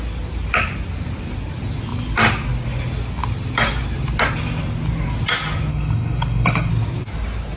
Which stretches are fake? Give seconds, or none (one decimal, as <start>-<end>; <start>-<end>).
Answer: 5.7-6.7